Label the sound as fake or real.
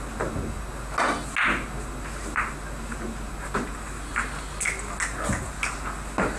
real